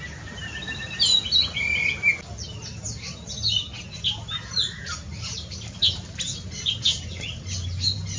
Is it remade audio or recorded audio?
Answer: recorded